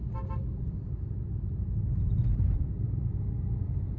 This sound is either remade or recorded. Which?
recorded